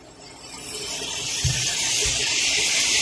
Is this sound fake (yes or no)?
no